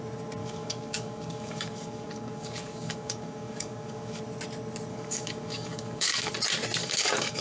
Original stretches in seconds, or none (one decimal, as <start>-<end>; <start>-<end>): 0.0-0.4; 4.2-4.9; 6.3-6.8